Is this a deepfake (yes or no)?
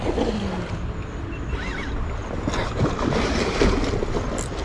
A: no